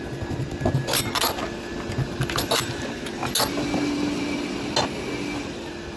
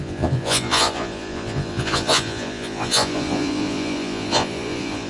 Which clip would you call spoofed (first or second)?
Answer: second